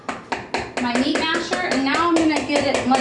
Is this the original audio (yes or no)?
yes